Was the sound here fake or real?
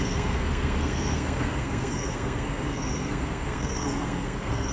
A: fake